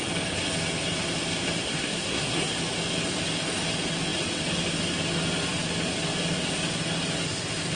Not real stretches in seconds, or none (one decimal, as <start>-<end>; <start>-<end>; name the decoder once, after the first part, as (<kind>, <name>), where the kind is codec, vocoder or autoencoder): 1.6-2.5 (codec, SNAC)